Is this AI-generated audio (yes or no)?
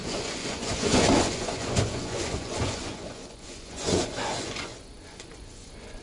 yes